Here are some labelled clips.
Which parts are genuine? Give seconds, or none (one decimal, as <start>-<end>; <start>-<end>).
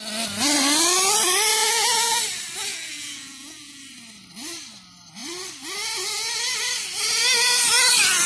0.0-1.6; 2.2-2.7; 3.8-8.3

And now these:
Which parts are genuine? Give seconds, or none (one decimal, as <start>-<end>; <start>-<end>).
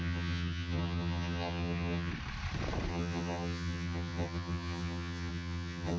2.1-2.9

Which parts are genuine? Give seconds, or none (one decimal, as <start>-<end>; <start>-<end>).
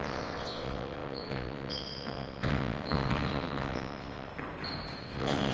4.3-5.0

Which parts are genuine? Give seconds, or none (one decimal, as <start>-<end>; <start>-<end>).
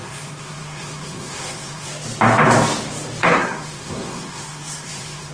1.9-3.2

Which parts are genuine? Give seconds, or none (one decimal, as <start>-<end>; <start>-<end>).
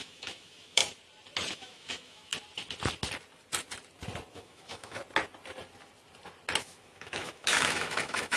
0.8-1.5; 2.3-4.3; 5.0-6.6